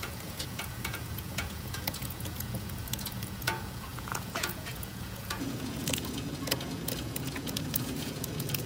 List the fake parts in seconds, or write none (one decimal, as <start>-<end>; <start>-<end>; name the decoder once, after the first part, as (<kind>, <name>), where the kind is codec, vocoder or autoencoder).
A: 0.0-8.7 (vocoder, Vocos)